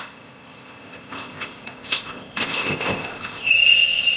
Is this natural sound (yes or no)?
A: no